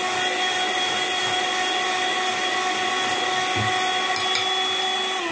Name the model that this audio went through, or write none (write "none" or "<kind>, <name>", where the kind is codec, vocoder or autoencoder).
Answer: none